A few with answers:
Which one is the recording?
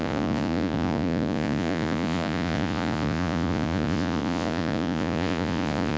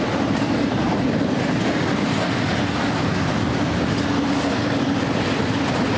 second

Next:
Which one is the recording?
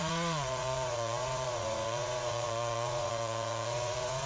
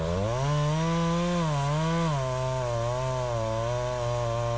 second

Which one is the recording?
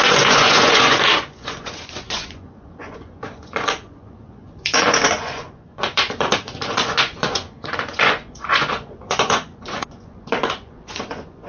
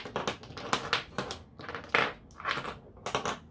second